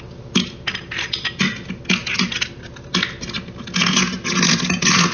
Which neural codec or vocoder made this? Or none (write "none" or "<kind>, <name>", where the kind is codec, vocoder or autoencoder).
none